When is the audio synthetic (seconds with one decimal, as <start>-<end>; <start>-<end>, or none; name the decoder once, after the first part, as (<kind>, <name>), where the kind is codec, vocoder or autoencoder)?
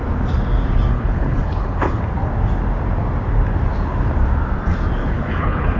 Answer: 0.9-2.0 (codec, HILCodec); 5.0-5.8